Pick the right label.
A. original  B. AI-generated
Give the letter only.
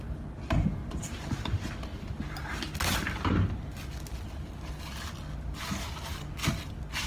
A